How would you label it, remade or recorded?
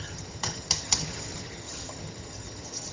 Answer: remade